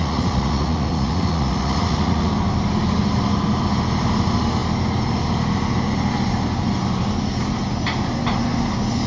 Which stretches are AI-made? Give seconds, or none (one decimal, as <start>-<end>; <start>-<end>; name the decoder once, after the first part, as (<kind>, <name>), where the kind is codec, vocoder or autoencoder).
0.0-2.3 (vocoder, Vocos)